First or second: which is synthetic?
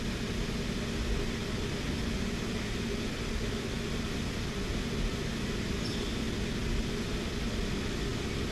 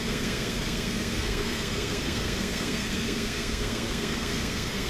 second